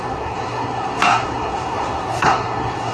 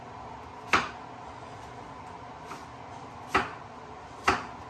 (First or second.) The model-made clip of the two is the first